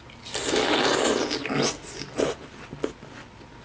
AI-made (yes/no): no